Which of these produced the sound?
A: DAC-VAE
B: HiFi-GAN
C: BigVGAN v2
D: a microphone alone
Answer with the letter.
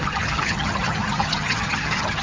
B